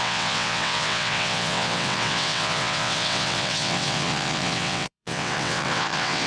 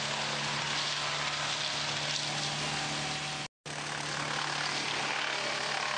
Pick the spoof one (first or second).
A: first